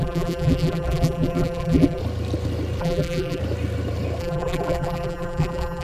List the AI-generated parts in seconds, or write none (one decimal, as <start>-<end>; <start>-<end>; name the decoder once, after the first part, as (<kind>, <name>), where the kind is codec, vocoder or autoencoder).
0.0-2.0 (vocoder, BigVGAN v2); 2.8-3.4; 4.2-5.8